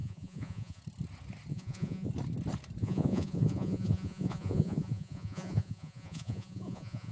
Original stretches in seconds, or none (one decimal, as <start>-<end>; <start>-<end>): 0.8-1.5; 2.1-2.8